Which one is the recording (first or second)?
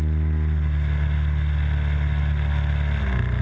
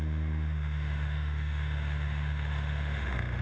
first